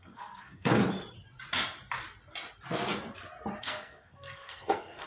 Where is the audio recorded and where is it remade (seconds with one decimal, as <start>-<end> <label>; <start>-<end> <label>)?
0.0-0.8 remade; 0.8-3.6 recorded; 3.6-5.1 remade